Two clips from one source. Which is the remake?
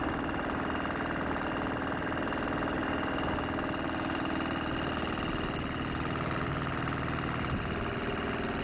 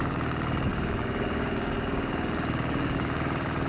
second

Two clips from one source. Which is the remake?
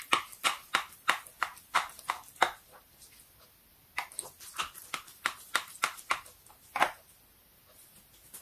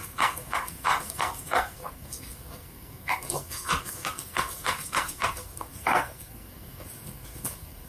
second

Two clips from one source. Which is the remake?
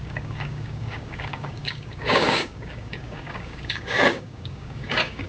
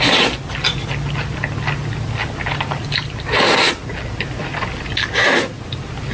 first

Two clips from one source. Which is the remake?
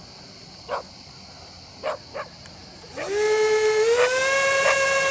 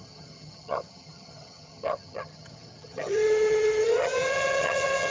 second